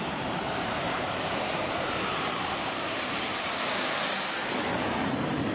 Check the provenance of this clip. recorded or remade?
remade